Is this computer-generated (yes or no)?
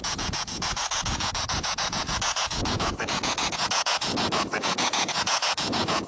yes